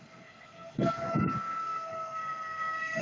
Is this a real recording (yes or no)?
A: no